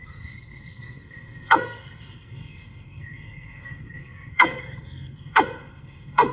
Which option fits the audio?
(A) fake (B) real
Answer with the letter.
A